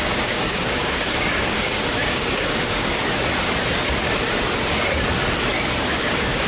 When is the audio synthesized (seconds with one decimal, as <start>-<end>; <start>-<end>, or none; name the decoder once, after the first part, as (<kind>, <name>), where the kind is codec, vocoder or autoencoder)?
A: 0.0-3.0 (codec, DAC); 5.8-6.5